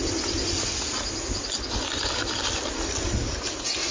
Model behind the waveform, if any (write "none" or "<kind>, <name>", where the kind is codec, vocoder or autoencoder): none